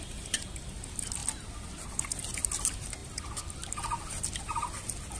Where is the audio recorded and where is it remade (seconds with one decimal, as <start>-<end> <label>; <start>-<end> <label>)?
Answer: 0.0-5.2 recorded